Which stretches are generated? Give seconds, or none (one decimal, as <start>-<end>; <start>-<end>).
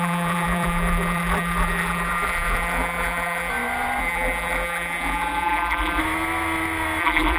0.0-3.5; 4.0-6.0; 7.0-7.4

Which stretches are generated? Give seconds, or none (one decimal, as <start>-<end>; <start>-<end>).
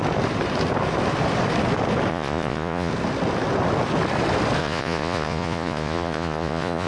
2.1-2.9; 4.6-6.9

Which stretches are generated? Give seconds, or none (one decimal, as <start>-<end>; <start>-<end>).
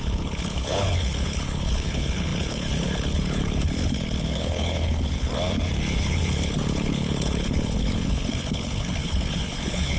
0.0-5.3; 6.0-10.0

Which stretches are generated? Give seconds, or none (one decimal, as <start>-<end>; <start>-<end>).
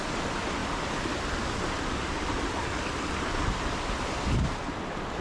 0.6-3.1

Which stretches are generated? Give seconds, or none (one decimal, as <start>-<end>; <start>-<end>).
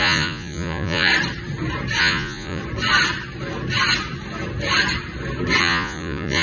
0.0-1.1; 2.0-2.6; 5.6-6.4